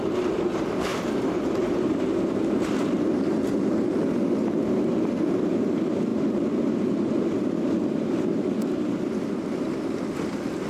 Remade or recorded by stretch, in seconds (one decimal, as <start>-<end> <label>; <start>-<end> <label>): 0.0-10.7 recorded